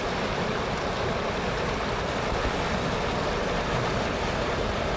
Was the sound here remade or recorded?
recorded